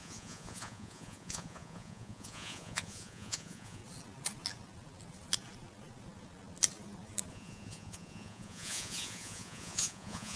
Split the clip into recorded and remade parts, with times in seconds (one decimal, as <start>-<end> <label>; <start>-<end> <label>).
0.0-3.8 remade; 3.8-7.3 recorded; 7.3-10.4 remade